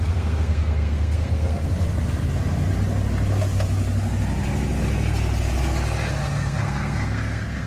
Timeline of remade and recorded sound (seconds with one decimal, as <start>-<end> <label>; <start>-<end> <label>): 0.0-1.7 remade; 1.7-6.1 recorded; 6.1-7.7 remade